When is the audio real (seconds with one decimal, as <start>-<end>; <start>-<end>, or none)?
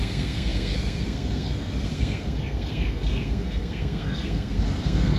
none